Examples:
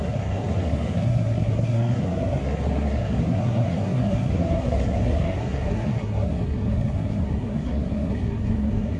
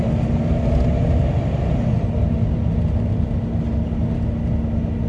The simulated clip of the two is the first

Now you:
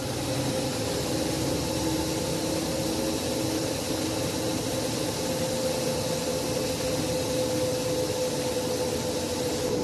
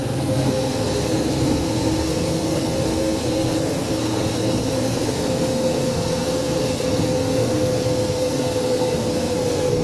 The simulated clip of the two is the second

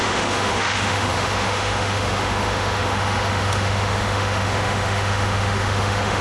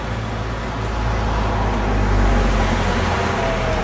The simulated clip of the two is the first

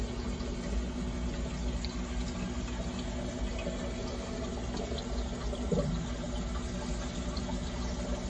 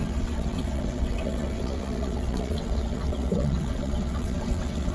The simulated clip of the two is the second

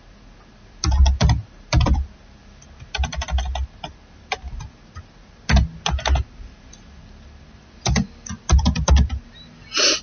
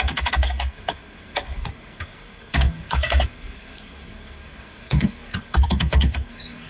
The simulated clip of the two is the second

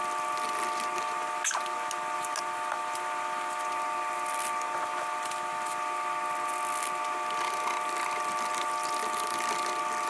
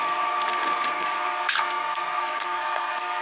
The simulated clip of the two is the second